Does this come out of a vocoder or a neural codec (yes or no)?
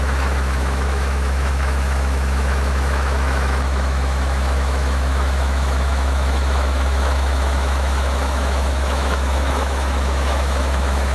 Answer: yes